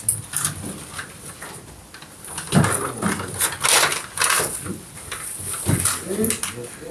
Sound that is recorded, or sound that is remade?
recorded